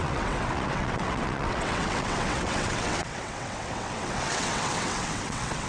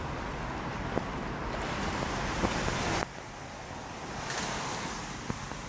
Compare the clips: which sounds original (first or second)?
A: second